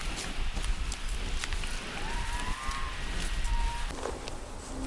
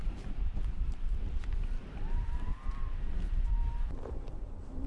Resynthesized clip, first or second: second